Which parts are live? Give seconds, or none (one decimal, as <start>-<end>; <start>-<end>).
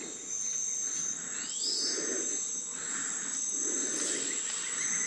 0.0-5.1